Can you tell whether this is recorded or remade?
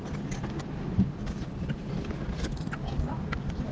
recorded